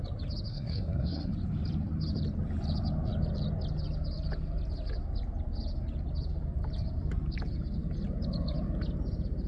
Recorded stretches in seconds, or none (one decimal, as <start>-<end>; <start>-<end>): 0.0-0.5; 1.3-9.5